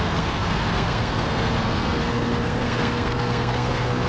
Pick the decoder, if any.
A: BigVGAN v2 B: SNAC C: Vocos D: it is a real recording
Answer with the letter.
B